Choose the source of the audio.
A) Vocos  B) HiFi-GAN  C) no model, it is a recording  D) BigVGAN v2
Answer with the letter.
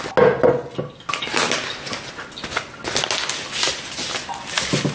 C